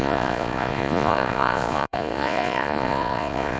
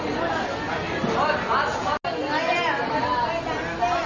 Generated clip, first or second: first